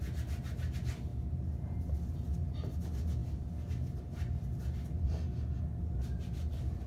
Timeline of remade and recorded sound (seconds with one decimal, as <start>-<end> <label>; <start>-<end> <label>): 0.0-1.1 recorded; 1.1-1.9 remade; 1.9-6.9 recorded